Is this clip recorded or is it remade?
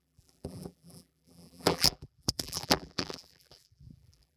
remade